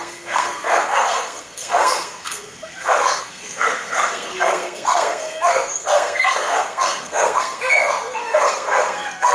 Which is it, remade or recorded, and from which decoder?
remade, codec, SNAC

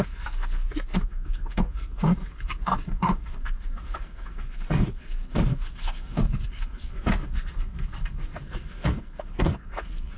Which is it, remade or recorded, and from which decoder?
remade, codec, SNAC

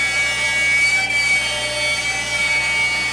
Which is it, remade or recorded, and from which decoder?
recorded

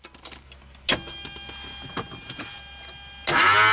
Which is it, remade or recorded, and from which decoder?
recorded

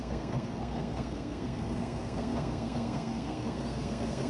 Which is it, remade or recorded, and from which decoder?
remade, codec, SNAC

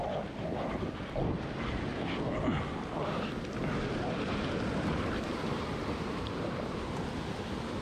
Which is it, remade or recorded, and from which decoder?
recorded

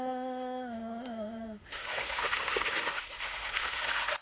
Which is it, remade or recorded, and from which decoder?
remade, autoencoder, DAC-VAE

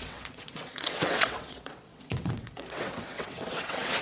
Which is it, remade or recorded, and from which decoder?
remade, vocoder, WaveNeXt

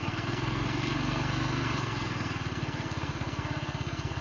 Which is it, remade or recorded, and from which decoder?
remade, codec, SNAC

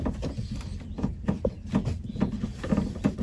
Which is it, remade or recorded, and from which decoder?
recorded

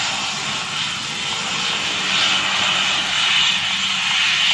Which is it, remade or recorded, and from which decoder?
recorded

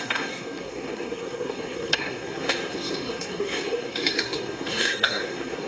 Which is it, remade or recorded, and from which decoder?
remade, codec, SNAC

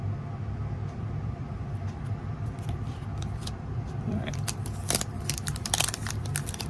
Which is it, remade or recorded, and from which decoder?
remade, vocoder, BigVGAN v2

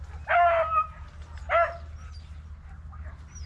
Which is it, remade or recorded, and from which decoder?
recorded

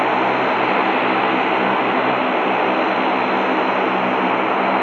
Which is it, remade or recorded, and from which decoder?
recorded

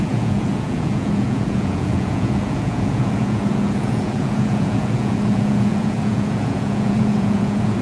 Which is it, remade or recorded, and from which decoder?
remade, vocoder, Vocos